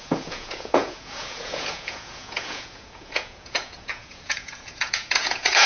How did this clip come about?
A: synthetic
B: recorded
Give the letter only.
A